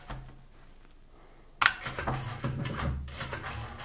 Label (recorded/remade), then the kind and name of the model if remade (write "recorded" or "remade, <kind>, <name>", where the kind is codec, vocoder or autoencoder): recorded